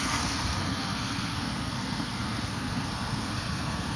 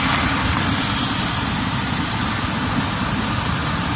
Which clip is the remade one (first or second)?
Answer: first